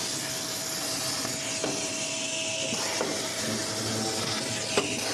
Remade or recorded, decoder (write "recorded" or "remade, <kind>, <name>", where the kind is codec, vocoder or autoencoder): recorded